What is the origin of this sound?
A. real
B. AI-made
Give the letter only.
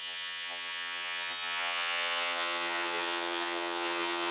B